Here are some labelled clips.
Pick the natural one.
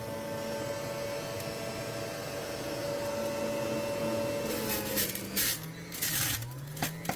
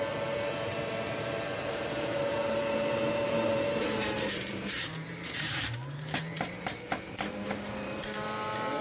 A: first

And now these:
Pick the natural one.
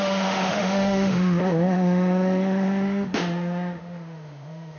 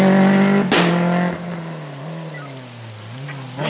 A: second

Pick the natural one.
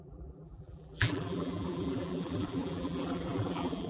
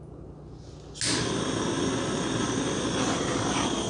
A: second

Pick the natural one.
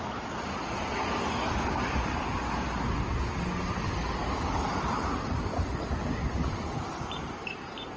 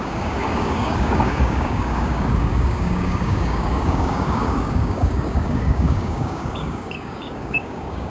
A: first